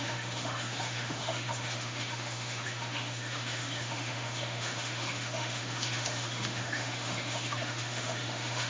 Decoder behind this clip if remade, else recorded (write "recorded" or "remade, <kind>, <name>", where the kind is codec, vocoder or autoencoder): remade, autoencoder, DAC-VAE